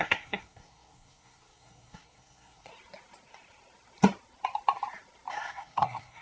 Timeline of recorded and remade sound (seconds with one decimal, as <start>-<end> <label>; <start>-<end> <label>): 0.0-2.7 remade; 2.7-5.3 recorded; 5.3-6.2 remade